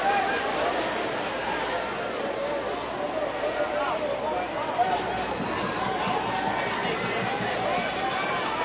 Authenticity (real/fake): real